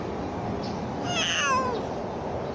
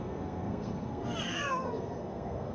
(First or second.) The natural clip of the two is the first